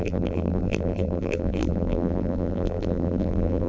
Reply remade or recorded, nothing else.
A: remade